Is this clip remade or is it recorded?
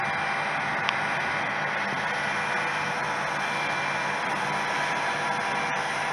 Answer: recorded